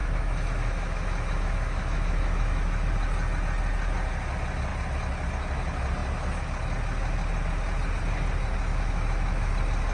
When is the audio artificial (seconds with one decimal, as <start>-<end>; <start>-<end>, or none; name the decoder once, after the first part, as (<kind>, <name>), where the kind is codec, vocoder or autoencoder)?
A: 0.0-2.9 (autoencoder, DAC-VAE); 8.7-9.5